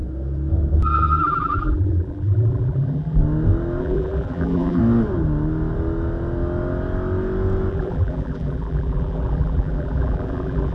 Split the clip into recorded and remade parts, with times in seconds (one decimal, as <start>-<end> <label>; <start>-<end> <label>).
0.0-1.2 recorded; 1.2-3.2 remade; 3.2-3.8 recorded; 3.8-4.8 remade; 4.8-7.7 recorded; 7.7-10.7 remade